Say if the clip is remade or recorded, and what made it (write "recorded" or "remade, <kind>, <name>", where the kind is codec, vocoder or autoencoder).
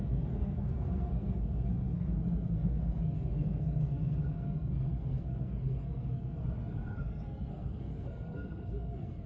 remade, codec, SNAC